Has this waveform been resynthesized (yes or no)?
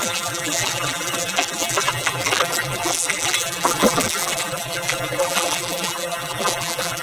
yes